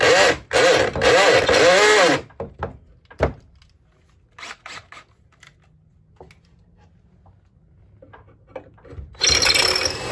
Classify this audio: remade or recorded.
recorded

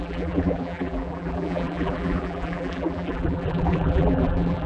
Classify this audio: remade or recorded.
remade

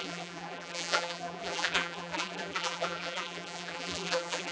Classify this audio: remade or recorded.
remade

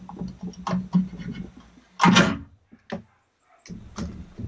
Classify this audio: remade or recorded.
recorded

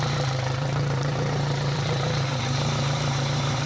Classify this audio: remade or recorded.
remade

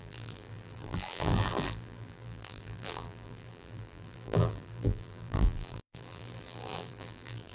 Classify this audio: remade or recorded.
remade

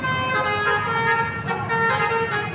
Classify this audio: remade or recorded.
recorded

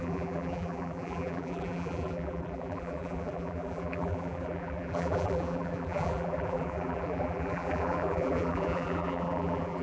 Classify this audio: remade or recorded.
remade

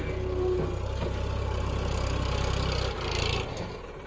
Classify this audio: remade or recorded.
recorded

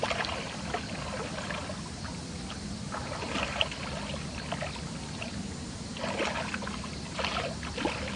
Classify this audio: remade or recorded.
recorded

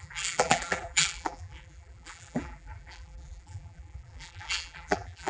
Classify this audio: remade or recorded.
remade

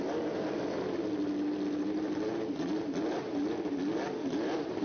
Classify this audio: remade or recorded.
recorded